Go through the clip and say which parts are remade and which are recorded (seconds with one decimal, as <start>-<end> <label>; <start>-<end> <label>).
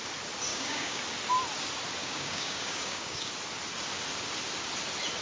0.0-0.5 recorded; 0.5-1.0 remade; 1.0-2.0 recorded; 2.0-3.3 remade; 3.3-5.2 recorded